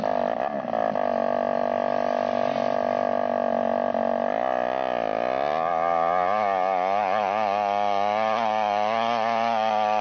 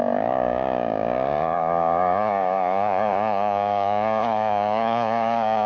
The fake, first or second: second